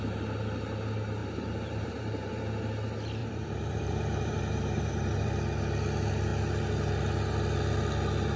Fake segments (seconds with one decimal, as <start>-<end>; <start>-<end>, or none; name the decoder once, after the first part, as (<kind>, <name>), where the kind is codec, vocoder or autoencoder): 1.2-2.4 (vocoder, BigVGAN v2); 3.2-5.3